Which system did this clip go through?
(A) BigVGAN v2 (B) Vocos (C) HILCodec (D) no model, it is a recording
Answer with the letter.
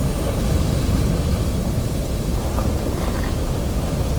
D